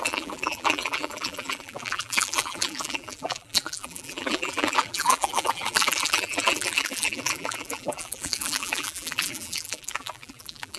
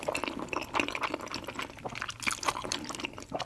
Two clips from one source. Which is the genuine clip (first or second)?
second